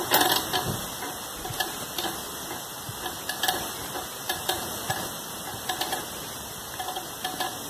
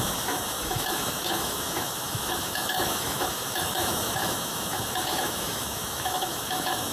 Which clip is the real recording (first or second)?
first